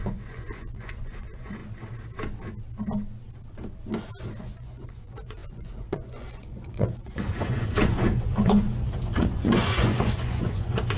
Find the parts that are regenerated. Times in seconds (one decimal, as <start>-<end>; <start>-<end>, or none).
0.0-1.6; 4.4-11.0